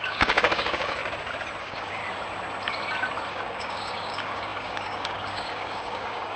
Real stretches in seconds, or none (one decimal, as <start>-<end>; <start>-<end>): 1.0-1.6; 2.0-3.3